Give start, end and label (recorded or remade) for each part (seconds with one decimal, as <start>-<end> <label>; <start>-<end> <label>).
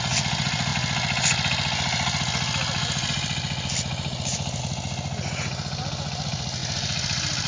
0.0-7.5 recorded